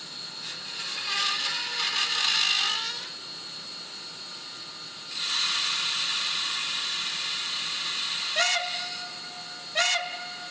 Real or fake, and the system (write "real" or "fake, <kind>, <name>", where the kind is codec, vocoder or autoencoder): real